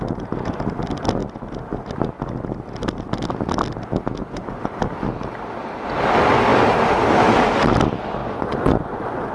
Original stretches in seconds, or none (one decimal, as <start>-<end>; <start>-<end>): 0.0-4.2; 4.8-8.2